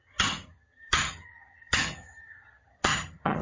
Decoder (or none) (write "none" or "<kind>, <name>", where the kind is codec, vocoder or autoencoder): vocoder, HiFi-GAN